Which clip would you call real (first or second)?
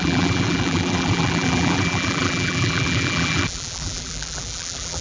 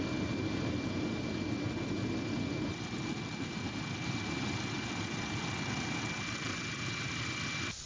second